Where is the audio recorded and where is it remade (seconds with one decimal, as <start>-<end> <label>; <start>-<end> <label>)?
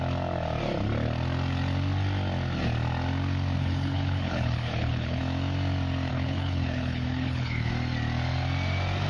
0.0-3.6 recorded; 3.6-5.2 remade; 5.2-6.1 recorded; 6.1-7.7 remade; 7.7-9.1 recorded